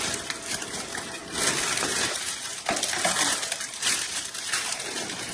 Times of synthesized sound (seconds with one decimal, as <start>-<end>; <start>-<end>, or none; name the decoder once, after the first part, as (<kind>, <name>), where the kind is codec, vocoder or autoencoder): 0.0-1.2 (vocoder, BigVGAN v2); 1.8-5.3